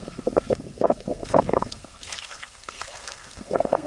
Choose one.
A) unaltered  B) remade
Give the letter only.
B